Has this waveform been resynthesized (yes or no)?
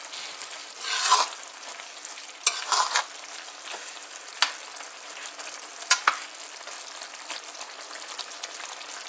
no